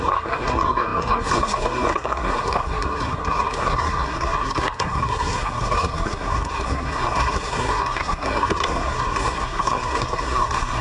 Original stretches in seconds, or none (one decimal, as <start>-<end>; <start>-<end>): none